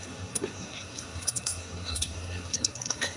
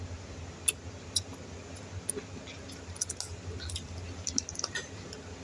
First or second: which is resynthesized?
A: first